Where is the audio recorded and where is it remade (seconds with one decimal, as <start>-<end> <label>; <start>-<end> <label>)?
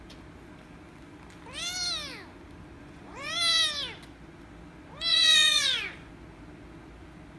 0.0-2.8 recorded; 2.8-3.3 remade; 3.3-5.1 recorded; 5.1-6.1 remade; 6.1-7.4 recorded